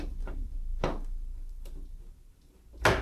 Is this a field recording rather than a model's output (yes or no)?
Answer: yes